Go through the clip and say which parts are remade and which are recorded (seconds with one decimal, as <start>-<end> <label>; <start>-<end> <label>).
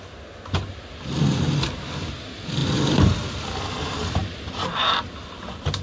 0.0-4.2 recorded; 4.2-5.1 remade; 5.1-5.8 recorded